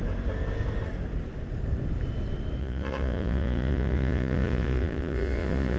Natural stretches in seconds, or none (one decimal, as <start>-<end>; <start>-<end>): 0.0-2.6